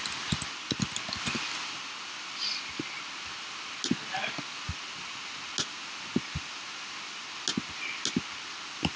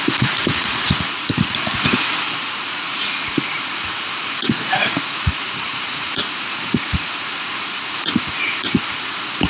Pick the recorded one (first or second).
first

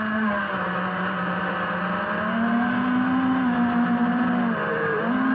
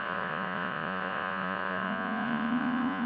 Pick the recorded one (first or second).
first